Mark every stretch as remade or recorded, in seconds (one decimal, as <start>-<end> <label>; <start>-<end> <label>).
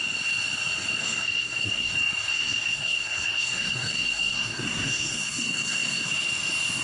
0.0-1.0 recorded; 1.0-1.9 remade; 1.9-2.3 recorded; 2.3-6.1 remade; 6.1-6.8 recorded